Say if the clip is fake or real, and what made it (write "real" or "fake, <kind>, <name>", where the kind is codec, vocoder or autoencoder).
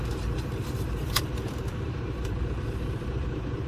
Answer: fake, vocoder, BigVGAN v2